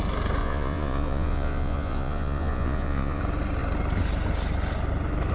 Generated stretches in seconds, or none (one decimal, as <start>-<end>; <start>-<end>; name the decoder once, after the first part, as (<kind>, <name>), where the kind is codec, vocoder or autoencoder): 0.4-3.2 (vocoder, Vocos)